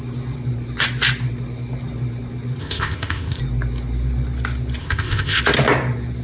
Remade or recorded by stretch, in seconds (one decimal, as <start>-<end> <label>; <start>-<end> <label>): 0.0-2.6 recorded; 2.6-3.4 remade; 3.4-4.8 recorded; 4.8-5.4 remade; 5.4-6.2 recorded